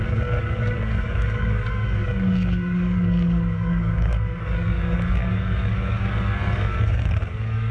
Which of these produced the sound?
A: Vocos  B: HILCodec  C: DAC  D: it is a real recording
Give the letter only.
C